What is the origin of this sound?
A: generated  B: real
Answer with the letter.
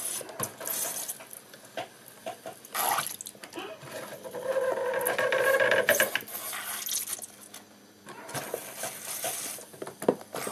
B